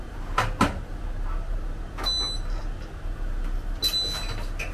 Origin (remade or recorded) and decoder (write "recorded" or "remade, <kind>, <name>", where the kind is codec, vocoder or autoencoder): recorded